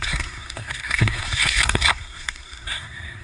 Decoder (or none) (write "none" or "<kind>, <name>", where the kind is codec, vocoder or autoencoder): codec, SNAC